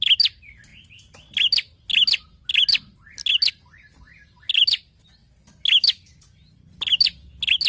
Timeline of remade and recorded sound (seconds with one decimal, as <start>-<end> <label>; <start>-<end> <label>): 0.0-7.7 recorded